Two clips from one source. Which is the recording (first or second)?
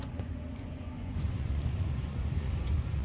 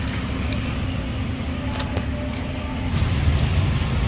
second